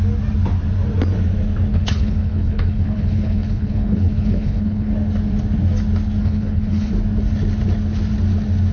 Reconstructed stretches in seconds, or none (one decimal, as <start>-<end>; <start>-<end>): 1.7-4.9; 6.2-6.9